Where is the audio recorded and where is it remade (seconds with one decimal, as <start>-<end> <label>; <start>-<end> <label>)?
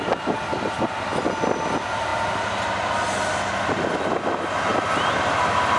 0.0-5.8 recorded